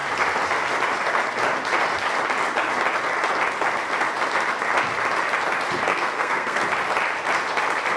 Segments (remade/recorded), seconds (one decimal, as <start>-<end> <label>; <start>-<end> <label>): 0.0-5.9 recorded; 5.9-6.6 remade; 6.6-8.0 recorded